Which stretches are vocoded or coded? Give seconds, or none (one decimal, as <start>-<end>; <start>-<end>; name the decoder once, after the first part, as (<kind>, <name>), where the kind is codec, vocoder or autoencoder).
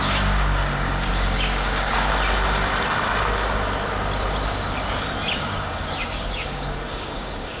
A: 0.0-0.6 (codec, DAC); 1.1-2.1; 5.4-7.6